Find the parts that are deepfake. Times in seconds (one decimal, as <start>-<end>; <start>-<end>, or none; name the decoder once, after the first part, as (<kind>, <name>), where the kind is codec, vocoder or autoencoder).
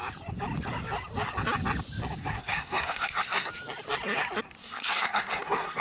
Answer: 2.2-3.5 (codec, SNAC); 4.6-5.8